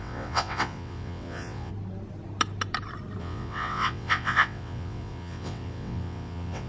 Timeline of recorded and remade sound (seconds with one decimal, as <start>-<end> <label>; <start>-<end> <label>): 0.0-1.7 remade; 1.7-3.2 recorded; 3.2-6.7 remade